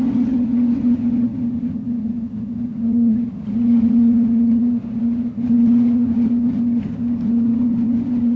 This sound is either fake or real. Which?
fake